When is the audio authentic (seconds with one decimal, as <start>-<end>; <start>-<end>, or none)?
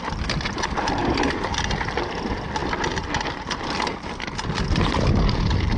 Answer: 0.0-5.8